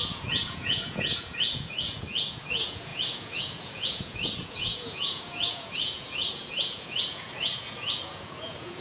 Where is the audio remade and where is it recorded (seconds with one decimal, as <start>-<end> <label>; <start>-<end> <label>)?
0.0-8.8 remade